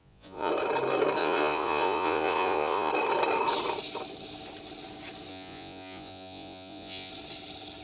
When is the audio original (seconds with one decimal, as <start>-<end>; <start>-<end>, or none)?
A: 0.5-1.2; 2.9-5.3; 7.1-7.8